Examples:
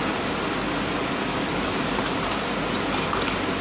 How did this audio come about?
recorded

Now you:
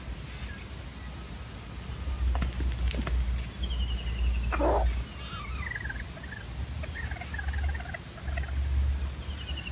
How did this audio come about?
recorded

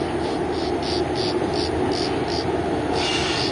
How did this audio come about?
recorded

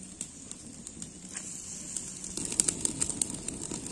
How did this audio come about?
recorded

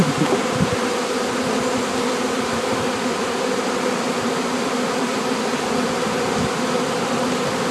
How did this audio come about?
recorded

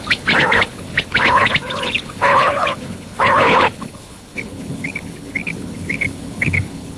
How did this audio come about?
remade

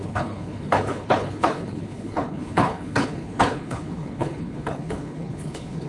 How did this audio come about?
remade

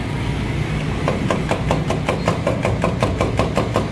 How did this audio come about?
recorded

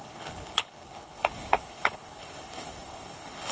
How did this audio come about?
remade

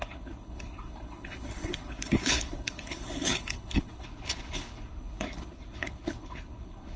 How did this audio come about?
remade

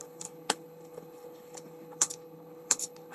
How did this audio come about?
remade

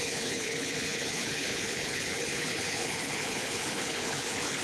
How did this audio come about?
remade